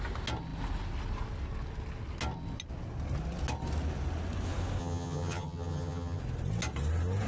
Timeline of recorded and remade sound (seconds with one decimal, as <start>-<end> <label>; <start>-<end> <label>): 0.0-4.8 recorded; 4.8-6.2 remade; 6.2-7.3 recorded